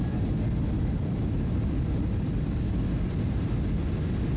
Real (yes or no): yes